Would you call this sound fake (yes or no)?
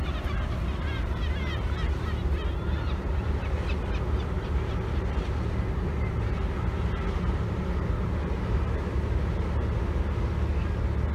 no